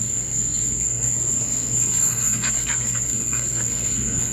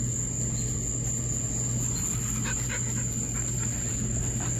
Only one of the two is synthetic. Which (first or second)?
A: first